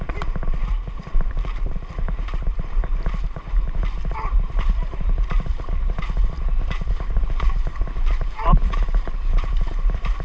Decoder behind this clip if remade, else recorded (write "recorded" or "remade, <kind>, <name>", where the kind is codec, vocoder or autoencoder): remade, vocoder, BigVGAN v2